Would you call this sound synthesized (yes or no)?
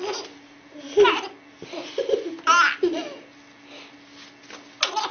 no